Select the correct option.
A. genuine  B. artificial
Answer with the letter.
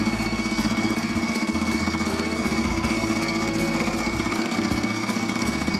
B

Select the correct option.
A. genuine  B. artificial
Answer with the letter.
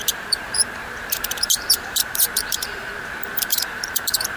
B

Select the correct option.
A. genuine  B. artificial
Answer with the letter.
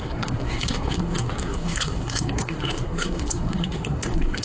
B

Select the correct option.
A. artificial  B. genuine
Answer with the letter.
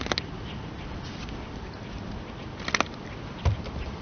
B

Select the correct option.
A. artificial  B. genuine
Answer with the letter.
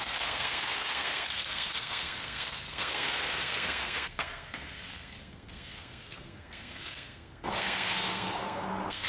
A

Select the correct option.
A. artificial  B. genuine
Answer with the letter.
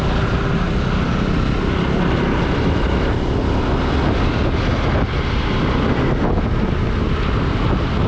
B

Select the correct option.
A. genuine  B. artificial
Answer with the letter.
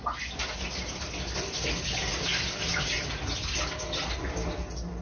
A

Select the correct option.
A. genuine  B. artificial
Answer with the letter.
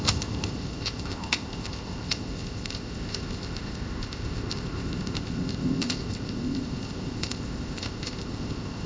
B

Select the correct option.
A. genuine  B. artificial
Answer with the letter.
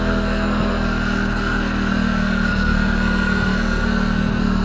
B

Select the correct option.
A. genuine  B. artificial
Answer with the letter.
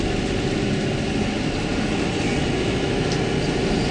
A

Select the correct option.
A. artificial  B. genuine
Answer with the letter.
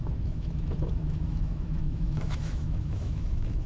A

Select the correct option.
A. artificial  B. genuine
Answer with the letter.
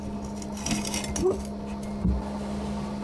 B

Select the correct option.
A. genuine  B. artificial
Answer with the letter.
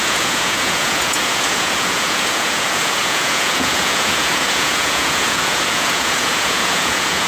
B